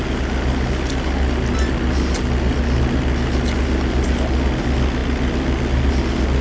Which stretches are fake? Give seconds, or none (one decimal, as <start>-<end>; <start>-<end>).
none

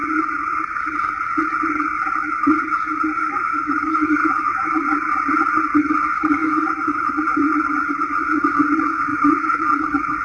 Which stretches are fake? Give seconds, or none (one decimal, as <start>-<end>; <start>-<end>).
3.2-4.7; 6.4-7.1; 9.1-9.7

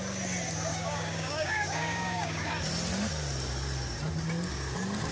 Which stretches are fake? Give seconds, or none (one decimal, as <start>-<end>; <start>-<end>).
0.7-2.5

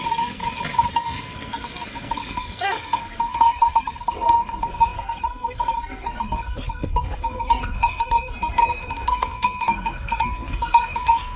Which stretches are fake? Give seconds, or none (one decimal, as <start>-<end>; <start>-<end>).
0.0-0.4; 0.9-11.4

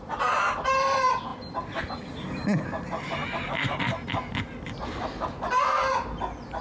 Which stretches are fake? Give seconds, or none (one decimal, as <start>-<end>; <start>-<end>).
none